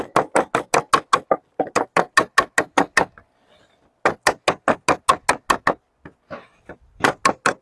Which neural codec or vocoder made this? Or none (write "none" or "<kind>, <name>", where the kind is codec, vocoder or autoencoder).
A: none